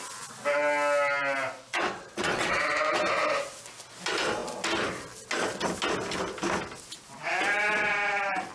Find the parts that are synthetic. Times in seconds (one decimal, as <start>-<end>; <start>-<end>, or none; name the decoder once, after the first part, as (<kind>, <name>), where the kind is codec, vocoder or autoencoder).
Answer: 1.7-2.6 (vocoder, WaveNeXt)